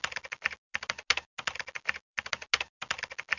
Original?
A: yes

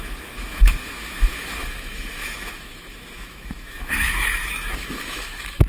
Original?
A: no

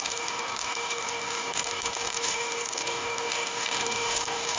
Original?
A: no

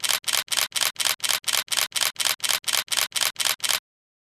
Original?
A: yes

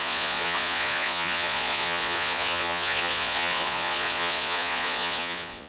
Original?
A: no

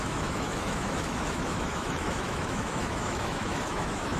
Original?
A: no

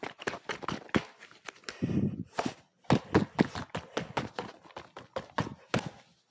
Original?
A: yes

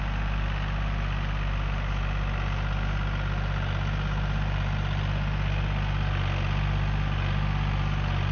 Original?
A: yes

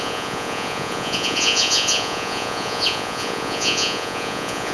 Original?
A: no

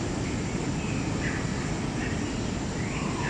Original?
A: yes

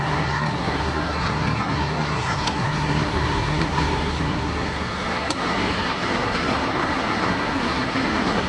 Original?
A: no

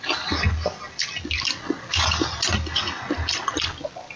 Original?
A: yes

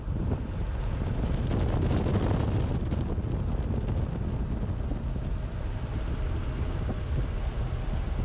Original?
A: yes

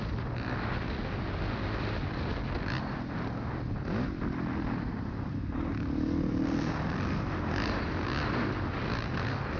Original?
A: yes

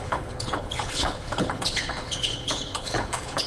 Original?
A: no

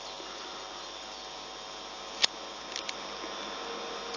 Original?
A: yes